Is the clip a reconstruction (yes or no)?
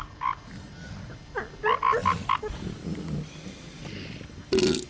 no